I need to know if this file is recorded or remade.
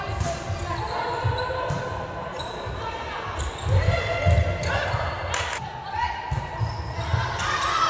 recorded